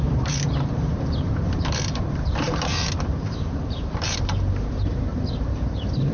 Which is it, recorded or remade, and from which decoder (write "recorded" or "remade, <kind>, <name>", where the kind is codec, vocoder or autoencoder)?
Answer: remade, vocoder, BigVGAN v2